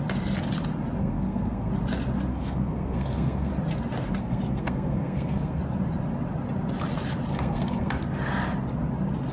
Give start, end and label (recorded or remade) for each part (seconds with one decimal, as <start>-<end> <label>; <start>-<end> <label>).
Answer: 0.0-1.0 recorded; 1.0-1.7 remade; 1.7-2.3 recorded; 2.3-3.5 remade; 3.5-4.2 recorded; 4.2-5.6 remade; 5.6-7.3 recorded; 7.3-7.9 remade; 7.9-9.3 recorded